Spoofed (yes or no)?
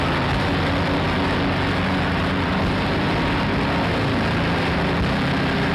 no